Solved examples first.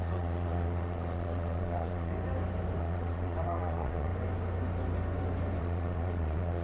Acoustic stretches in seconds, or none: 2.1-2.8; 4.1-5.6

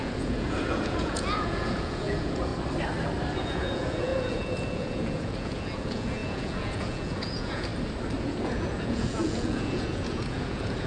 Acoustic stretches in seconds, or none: 2.5-3.4; 7.7-8.2

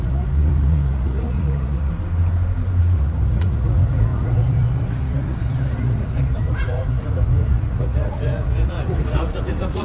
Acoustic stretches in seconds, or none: 1.9-2.8